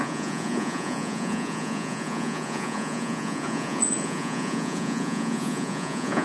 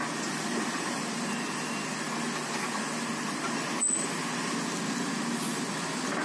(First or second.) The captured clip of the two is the second